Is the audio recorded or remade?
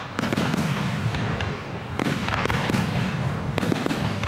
remade